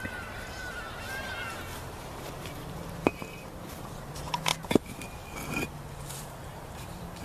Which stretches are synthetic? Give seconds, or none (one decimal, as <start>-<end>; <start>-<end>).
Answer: 0.0-4.5; 6.1-7.2